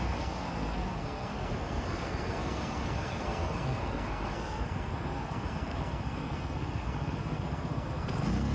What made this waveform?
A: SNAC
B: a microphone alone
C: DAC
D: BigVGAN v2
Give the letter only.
A